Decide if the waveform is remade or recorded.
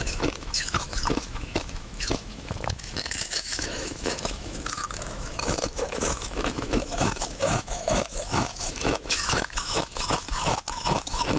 remade